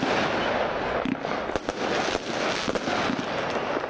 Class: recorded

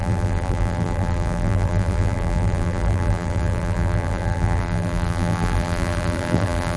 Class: remade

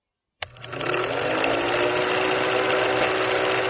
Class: recorded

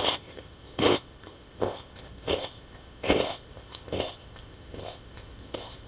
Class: remade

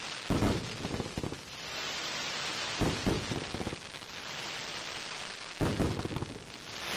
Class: recorded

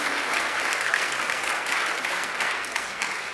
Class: remade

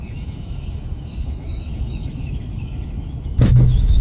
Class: remade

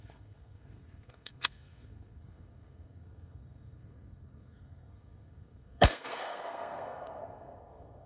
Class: remade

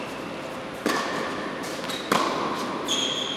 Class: recorded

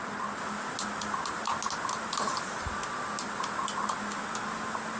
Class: recorded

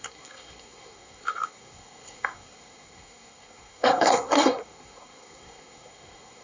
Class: remade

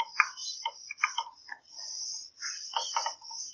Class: recorded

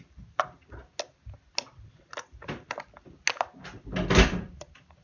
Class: recorded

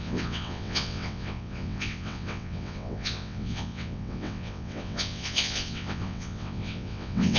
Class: remade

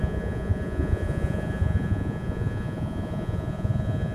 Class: remade